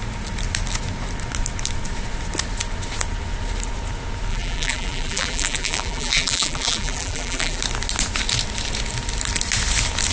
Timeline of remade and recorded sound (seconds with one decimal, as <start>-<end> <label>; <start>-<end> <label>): 0.0-4.3 recorded; 4.3-7.6 remade; 7.6-10.1 recorded